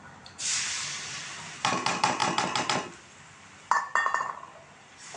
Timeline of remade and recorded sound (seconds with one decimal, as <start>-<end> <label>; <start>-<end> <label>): 0.0-5.2 recorded